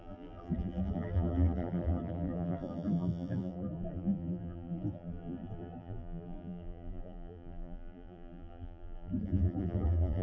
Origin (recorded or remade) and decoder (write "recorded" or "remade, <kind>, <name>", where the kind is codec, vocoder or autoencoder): remade, vocoder, BigVGAN v2